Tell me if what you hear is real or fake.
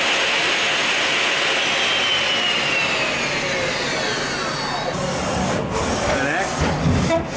real